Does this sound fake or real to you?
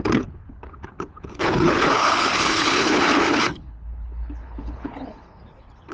fake